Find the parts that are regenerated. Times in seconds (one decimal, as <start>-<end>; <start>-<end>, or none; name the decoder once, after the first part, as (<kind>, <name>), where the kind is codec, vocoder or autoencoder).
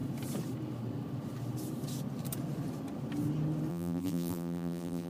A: 3.7-5.1 (vocoder, BigVGAN v2)